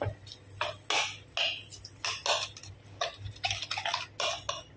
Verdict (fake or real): real